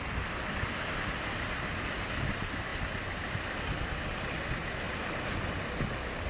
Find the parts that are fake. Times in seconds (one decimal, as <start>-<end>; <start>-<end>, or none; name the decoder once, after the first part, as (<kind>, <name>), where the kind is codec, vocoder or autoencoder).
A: 4.6-5.5 (vocoder, BigVGAN v2)